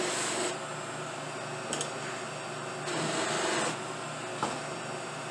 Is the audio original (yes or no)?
yes